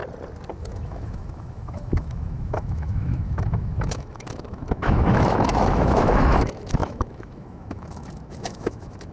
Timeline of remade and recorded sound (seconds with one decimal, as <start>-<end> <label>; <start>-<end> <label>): 0.0-0.6 recorded; 0.6-9.1 remade